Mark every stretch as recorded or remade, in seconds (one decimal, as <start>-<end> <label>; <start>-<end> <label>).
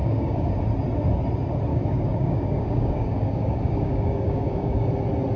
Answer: 0.0-0.5 remade; 0.5-1.7 recorded; 1.7-4.9 remade; 4.9-5.4 recorded